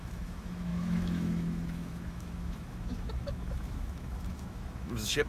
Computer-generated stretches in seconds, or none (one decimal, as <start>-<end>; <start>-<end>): 0.0-5.3